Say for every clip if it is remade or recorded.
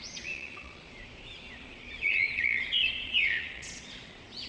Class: remade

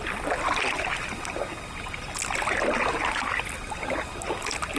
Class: recorded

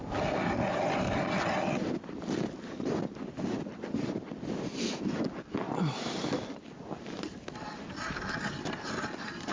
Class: recorded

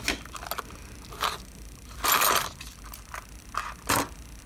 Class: recorded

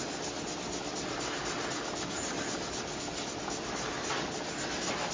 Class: recorded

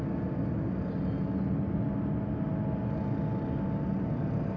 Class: recorded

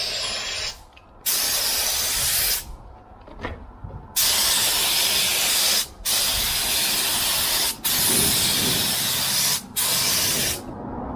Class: recorded